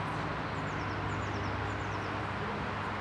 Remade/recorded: recorded